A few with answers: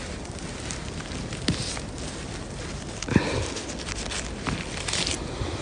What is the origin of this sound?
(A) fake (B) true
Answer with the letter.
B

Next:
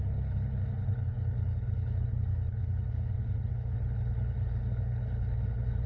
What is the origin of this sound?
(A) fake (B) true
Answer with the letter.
A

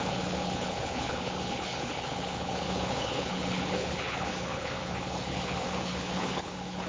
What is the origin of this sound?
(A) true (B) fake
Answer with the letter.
B